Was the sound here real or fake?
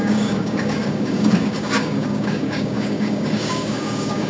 fake